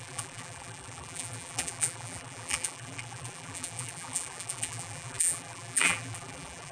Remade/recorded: remade